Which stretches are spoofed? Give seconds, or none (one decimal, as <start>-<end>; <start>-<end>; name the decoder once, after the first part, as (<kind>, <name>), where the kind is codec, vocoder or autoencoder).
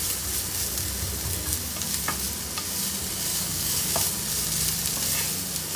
3.3-3.9 (codec, DAC)